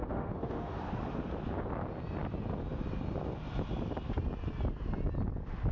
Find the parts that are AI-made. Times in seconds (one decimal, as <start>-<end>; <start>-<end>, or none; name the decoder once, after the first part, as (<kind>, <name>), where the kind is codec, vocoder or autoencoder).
0.0-0.8 (autoencoder, DAC-VAE)